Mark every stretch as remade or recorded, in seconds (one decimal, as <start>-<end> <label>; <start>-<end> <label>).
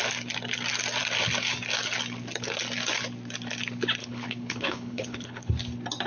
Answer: 0.0-4.0 recorded; 4.0-5.5 remade; 5.5-6.1 recorded